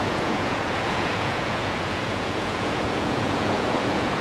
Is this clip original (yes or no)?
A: no